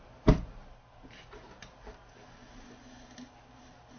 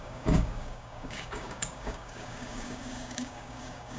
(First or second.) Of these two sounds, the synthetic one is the second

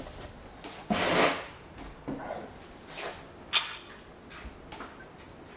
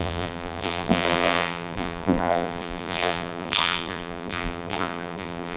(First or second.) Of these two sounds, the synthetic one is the second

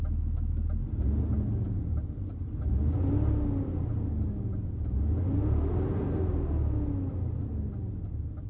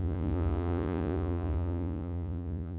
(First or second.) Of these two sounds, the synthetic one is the second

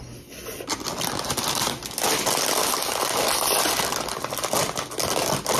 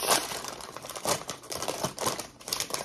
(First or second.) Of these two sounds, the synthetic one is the second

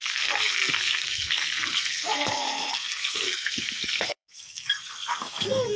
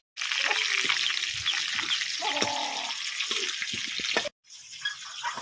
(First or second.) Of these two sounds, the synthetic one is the first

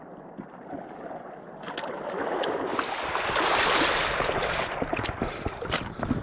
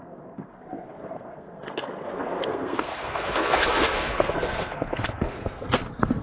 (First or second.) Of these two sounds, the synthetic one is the second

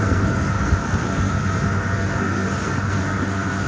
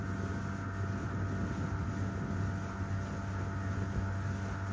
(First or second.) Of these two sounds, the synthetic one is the first